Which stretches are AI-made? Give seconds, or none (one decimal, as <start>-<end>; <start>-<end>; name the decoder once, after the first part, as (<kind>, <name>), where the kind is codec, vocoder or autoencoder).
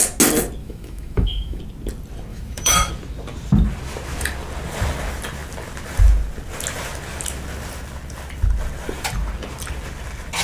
0.6-1.6 (autoencoder, DAC-VAE); 2.3-2.9